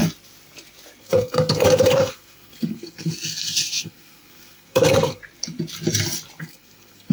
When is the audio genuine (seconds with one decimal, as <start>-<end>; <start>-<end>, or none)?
0.0-1.0; 5.2-6.4